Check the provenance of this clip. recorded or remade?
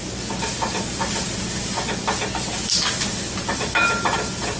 recorded